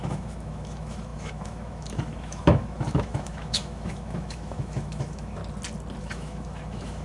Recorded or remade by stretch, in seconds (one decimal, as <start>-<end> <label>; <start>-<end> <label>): 0.0-5.4 remade; 5.4-6.0 recorded; 6.0-7.0 remade